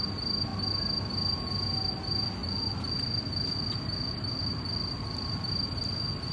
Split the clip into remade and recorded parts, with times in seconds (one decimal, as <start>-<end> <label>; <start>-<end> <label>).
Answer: 0.0-6.3 recorded